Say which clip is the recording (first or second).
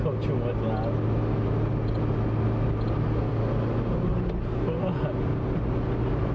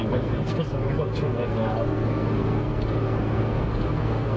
first